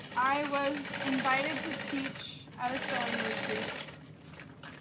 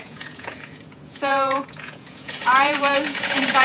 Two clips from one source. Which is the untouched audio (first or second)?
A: first